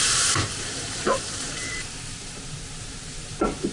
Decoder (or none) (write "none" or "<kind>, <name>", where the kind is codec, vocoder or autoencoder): vocoder, BigVGAN v2